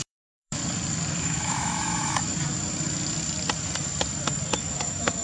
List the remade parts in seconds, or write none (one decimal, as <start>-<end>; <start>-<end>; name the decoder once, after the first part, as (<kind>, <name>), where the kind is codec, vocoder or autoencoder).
0.0-0.6 (autoencoder, DAC-VAE); 1.1-2.3; 4.7-5.2